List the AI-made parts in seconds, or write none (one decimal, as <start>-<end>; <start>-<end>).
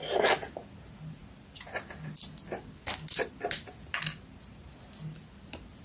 none